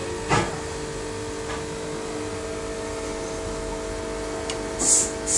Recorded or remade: recorded